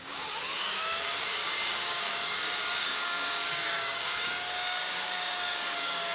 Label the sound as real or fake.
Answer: fake